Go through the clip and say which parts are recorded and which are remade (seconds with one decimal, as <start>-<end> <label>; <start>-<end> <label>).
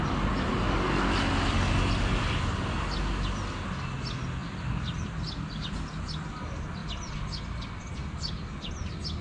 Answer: 0.0-9.2 recorded